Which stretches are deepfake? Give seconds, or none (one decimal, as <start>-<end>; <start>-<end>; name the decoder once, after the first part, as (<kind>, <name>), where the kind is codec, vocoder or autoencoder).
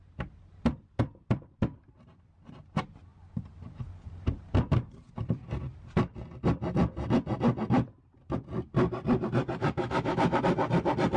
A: 9.6-10.4 (autoencoder, DAC-VAE)